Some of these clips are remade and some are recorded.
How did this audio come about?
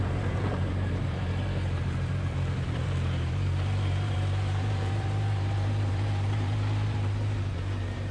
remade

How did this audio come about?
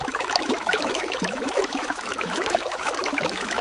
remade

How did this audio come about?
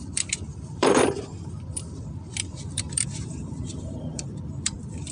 remade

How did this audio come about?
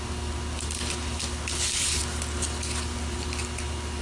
recorded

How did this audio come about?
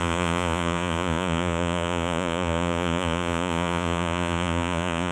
remade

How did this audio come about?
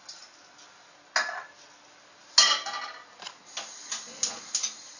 recorded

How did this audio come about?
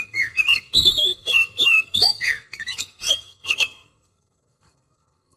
remade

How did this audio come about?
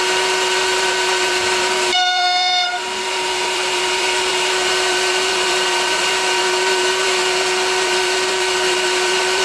remade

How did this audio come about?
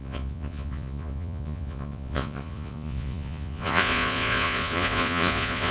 remade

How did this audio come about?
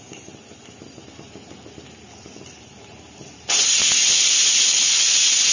recorded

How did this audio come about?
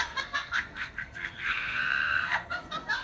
remade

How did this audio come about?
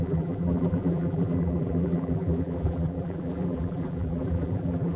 remade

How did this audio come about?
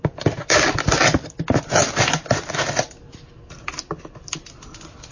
recorded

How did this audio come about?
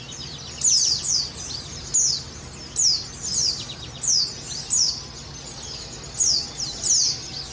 recorded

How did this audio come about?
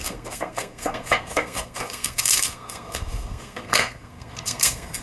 remade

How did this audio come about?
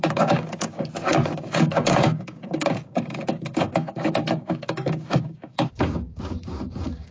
remade